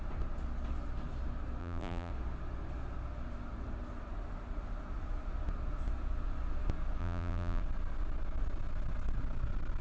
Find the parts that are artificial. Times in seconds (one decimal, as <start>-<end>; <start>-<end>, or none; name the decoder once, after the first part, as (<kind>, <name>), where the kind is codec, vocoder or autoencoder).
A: 1.6-2.1 (vocoder, BigVGAN v2); 7.0-7.6